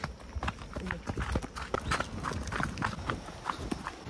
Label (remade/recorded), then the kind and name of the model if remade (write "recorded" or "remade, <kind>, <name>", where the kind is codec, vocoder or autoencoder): recorded